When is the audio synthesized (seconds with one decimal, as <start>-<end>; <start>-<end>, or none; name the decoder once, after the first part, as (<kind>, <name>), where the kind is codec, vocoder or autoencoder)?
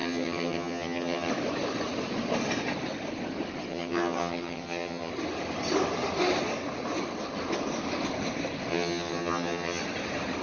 0.0-1.3 (vocoder, HiFi-GAN); 3.7-5.1; 8.7-9.8